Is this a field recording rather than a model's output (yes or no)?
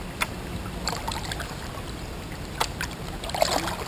yes